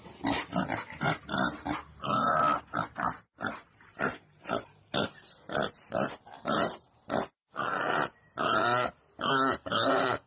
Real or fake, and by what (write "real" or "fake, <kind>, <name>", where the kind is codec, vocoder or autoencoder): real